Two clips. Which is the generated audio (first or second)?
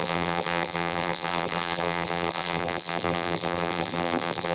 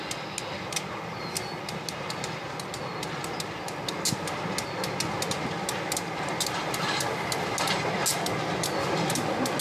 first